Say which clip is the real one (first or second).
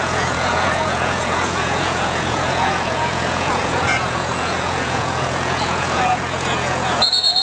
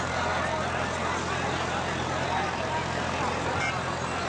second